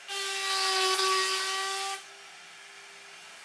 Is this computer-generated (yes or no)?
no